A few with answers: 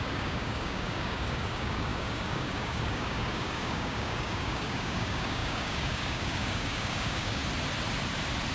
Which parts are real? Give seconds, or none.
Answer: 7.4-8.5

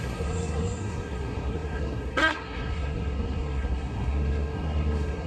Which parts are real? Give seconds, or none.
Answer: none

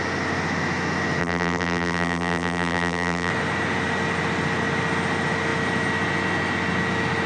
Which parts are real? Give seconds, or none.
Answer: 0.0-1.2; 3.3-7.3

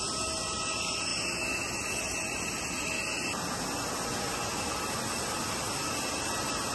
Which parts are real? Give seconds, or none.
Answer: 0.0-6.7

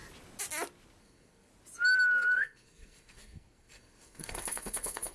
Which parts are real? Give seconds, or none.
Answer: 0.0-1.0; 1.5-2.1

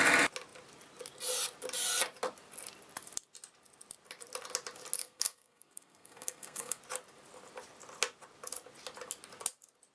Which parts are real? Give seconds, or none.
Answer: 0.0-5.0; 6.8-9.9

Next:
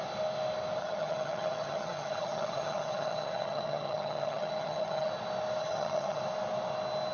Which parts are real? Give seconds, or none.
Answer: 0.0-0.8; 5.1-5.6; 6.2-7.1

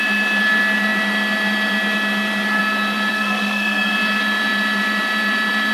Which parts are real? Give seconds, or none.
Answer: 0.0-3.1; 3.9-5.7